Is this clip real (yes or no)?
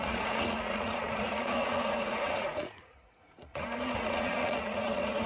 no